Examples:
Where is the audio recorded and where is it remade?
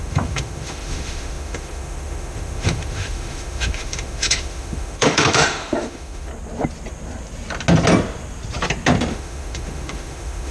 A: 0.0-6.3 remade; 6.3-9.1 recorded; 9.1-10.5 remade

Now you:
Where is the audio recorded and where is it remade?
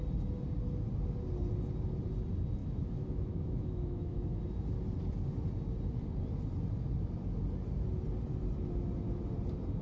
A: 0.0-2.6 recorded; 2.6-4.4 remade; 4.4-9.8 recorded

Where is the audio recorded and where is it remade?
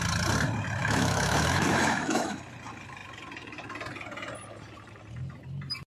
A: 0.0-0.8 recorded; 0.8-2.4 remade; 2.4-5.9 recorded